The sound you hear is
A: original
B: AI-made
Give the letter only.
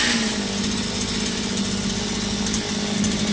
A